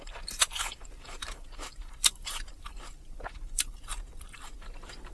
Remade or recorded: remade